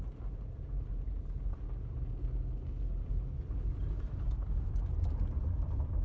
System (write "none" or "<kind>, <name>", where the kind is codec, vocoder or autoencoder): none